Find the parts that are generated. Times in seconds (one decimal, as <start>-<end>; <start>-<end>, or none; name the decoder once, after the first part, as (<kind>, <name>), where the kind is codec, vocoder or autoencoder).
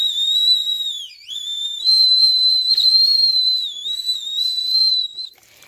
2.0-5.7 (vocoder, BigVGAN v2)